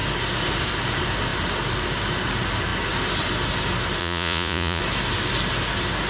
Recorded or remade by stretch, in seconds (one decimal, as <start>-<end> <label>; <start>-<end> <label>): 0.0-4.0 recorded; 4.0-4.8 remade; 4.8-6.1 recorded